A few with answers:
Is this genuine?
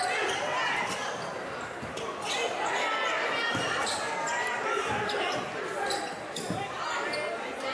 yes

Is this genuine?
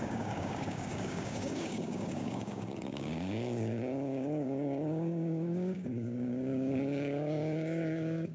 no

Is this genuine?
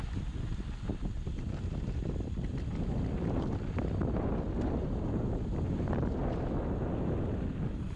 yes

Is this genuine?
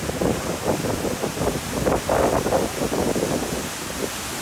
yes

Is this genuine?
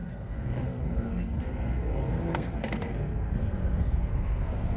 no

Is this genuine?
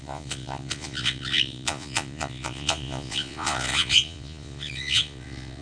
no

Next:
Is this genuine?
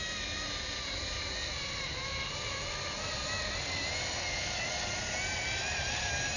yes